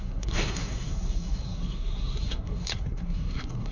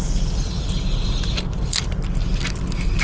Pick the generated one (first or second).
first